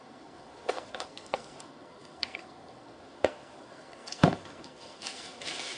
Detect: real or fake fake